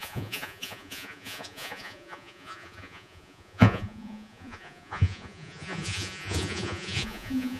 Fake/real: fake